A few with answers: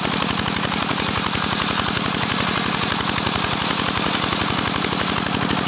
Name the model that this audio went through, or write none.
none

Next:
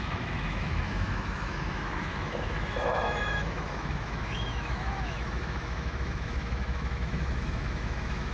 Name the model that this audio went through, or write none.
autoencoder, DAC-VAE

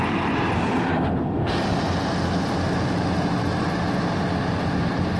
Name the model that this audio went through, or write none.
none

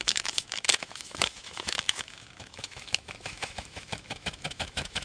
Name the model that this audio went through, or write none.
autoencoder, DAC-VAE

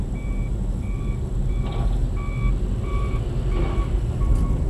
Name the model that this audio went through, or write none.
none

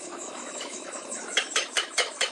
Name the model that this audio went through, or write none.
autoencoder, DAC-VAE